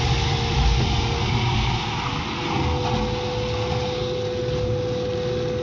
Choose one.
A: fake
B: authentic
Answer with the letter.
B